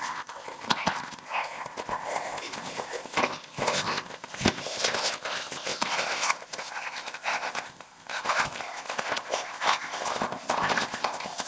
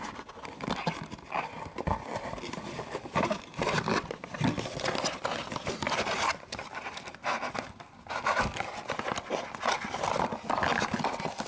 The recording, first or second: second